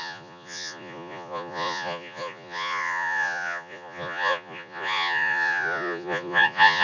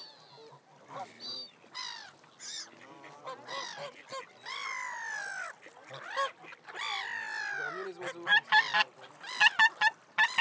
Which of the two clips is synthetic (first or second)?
first